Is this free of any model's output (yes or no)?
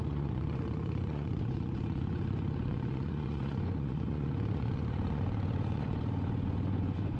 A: no